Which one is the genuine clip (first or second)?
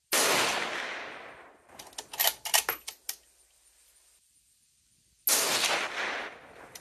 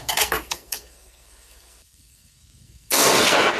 first